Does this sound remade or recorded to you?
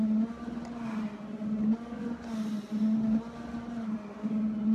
recorded